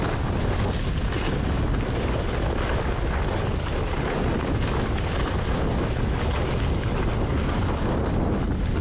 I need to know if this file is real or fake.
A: real